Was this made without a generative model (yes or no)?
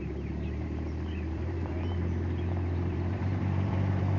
no